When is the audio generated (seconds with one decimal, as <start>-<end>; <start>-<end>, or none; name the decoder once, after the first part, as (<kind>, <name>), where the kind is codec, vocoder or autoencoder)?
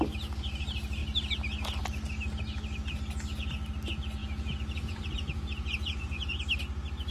4.2-6.4 (vocoder, Vocos)